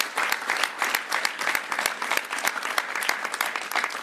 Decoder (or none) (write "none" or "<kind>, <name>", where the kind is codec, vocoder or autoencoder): none